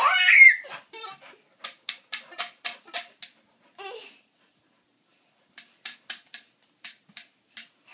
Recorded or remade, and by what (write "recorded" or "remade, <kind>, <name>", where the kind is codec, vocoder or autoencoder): recorded